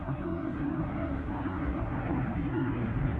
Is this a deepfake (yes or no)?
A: yes